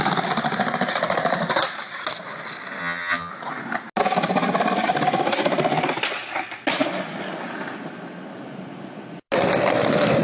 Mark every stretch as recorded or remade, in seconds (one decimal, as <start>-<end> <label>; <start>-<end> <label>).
0.0-2.8 recorded; 2.8-3.3 remade; 3.3-10.2 recorded